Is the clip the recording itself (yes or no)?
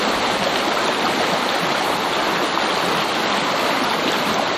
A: yes